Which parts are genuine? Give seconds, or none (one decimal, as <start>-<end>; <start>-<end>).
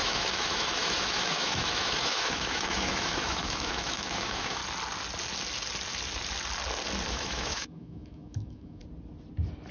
4.6-7.1; 8.8-9.7